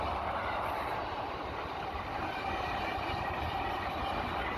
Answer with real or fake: real